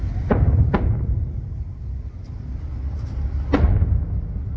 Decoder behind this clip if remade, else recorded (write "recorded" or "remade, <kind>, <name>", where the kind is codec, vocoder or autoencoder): recorded